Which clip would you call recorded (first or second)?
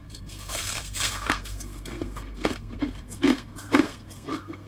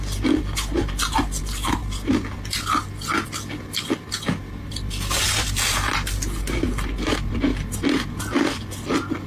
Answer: second